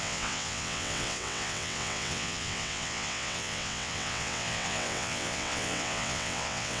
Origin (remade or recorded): remade